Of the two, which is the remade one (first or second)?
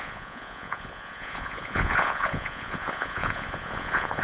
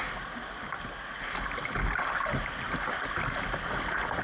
first